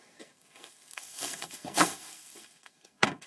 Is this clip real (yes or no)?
no